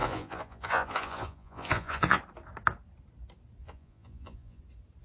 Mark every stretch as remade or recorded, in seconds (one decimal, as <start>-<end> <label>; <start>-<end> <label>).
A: 0.0-2.2 remade; 2.2-3.6 recorded; 3.6-4.6 remade; 4.6-5.0 recorded